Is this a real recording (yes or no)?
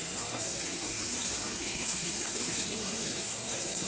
no